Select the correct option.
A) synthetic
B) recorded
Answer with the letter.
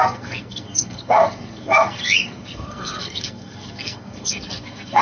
A